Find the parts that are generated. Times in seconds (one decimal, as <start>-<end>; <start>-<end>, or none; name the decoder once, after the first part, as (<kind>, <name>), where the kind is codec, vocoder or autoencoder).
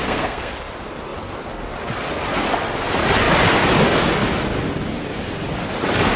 0.0-0.5 (codec, SNAC)